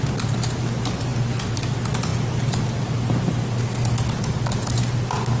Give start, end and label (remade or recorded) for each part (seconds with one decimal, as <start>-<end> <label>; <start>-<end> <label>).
0.0-5.4 recorded